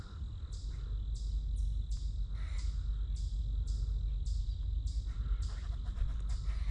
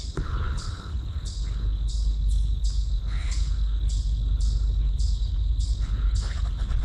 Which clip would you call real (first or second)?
first